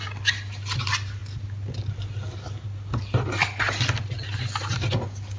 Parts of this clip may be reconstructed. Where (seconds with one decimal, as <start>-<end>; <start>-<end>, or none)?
none